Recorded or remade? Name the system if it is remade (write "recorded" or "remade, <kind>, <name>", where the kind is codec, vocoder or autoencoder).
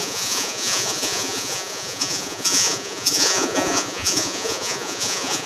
remade, vocoder, Vocos